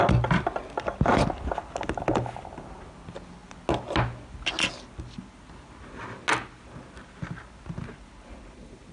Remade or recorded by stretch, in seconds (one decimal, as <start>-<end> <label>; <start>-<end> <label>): 0.0-8.9 recorded